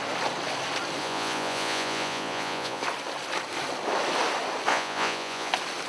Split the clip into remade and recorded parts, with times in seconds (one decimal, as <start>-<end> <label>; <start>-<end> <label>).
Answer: 0.0-1.0 recorded; 1.0-2.8 remade; 2.8-4.7 recorded; 4.7-5.5 remade; 5.5-5.9 recorded